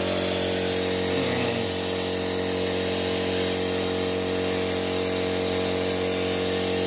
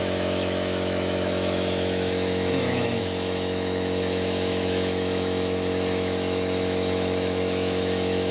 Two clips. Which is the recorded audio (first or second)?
first